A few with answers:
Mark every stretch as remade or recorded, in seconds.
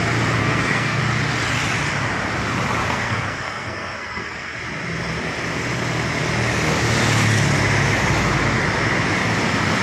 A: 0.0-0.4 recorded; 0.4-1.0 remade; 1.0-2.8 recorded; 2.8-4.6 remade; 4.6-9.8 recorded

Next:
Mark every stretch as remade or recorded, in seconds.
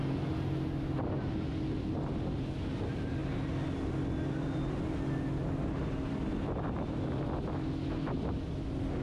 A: 0.0-9.0 recorded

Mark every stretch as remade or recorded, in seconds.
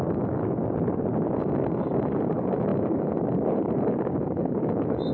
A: 0.0-0.4 remade; 0.4-1.2 recorded; 1.2-5.1 remade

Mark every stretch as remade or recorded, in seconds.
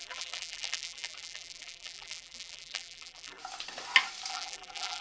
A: 0.0-3.4 remade; 3.4-4.3 recorded; 4.3-5.0 remade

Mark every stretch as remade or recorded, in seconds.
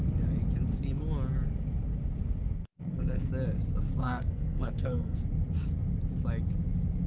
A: 0.0-2.6 recorded; 2.6-3.3 remade; 3.3-4.0 recorded; 4.0-5.2 remade; 5.2-7.1 recorded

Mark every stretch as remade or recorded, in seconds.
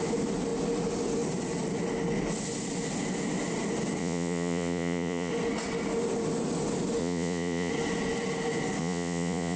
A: 0.0-4.0 recorded; 4.0-5.3 remade; 5.3-7.0 recorded; 7.0-7.7 remade; 7.7-8.8 recorded; 8.8-9.6 remade